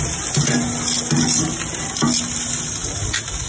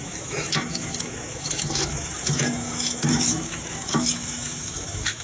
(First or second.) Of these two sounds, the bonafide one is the first